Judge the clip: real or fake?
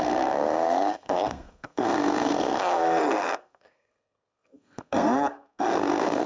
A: fake